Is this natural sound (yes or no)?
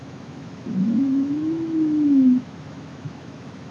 no